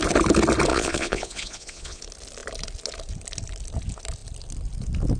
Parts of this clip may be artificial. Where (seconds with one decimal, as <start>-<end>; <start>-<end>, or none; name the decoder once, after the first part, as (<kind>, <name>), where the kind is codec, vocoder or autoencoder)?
0.7-2.0 (vocoder, Vocos)